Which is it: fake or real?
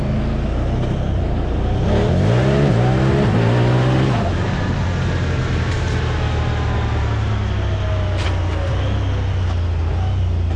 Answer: real